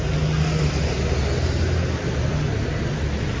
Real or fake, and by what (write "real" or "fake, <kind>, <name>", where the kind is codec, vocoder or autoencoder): real